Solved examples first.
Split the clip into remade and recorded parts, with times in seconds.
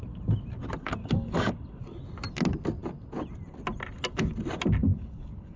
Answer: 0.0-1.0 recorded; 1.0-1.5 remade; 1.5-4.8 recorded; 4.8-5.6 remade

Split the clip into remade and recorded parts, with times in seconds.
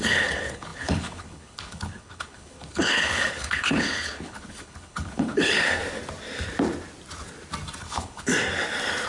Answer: 0.0-5.8 remade; 5.8-7.8 recorded; 7.8-8.3 remade; 8.3-9.1 recorded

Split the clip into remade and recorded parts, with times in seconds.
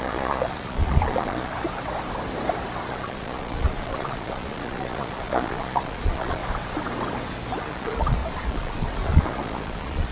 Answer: 0.0-1.5 remade; 1.5-2.9 recorded; 2.9-6.4 remade; 6.4-7.6 recorded; 7.6-10.1 remade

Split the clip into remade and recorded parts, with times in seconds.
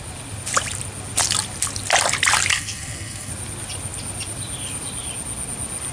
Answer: 0.0-2.5 recorded; 2.5-3.3 remade; 3.3-5.9 recorded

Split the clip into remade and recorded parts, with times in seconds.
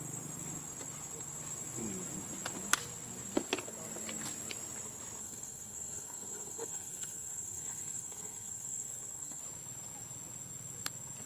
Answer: 0.0-5.2 recorded; 5.2-9.4 remade; 9.4-11.3 recorded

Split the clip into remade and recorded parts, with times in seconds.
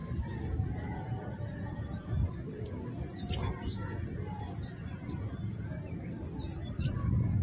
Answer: 0.0-5.4 remade; 5.4-6.9 recorded; 6.9-7.4 remade